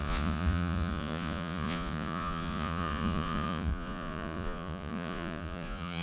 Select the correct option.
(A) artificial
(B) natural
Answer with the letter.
A